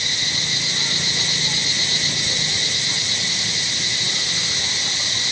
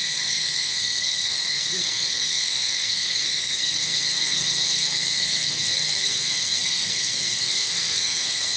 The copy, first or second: second